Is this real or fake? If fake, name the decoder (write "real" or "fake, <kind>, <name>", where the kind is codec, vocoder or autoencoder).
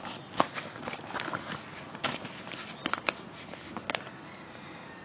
real